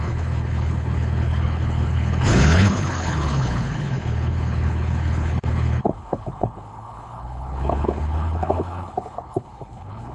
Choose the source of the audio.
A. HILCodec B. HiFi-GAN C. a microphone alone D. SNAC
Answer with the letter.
A